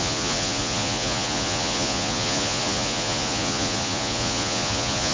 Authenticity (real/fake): fake